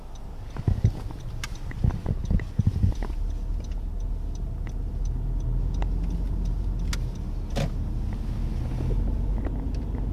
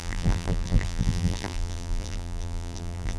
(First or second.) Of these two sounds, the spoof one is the second